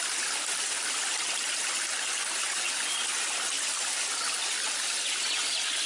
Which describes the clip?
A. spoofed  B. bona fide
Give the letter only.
B